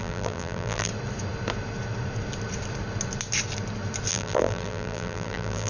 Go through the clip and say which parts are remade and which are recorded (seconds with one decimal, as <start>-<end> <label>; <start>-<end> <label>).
0.0-0.9 remade; 0.9-4.1 recorded; 4.1-5.7 remade